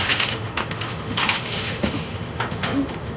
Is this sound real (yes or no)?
no